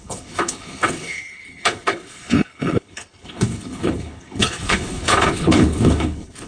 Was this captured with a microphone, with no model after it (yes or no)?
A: no